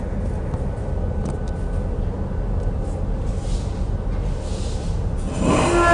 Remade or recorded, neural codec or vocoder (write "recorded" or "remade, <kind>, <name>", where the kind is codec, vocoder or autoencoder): recorded